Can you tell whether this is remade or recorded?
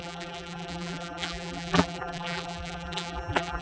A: remade